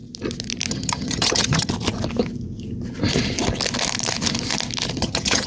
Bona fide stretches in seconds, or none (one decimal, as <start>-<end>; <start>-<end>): 0.0-0.7; 1.7-5.0